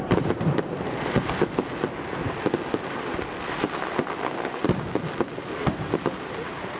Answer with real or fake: real